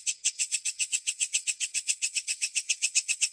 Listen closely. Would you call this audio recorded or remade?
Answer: remade